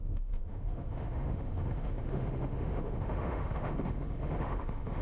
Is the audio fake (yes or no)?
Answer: yes